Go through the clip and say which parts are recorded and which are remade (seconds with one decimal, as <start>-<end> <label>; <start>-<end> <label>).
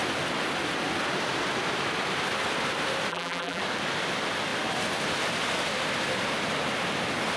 0.0-3.1 recorded; 3.1-3.6 remade; 3.6-7.4 recorded